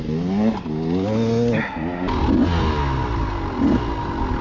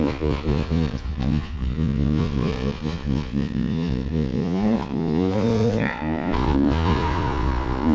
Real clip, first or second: first